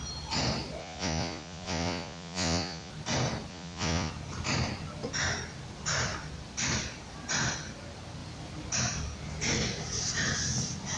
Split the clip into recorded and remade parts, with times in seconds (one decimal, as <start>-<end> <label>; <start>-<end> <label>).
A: 0.0-0.8 recorded; 0.8-2.9 remade; 2.9-3.5 recorded; 3.5-4.1 remade; 4.1-11.0 recorded